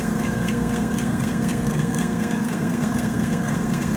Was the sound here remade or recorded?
remade